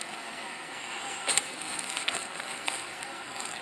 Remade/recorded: remade